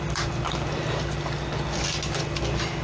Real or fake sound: real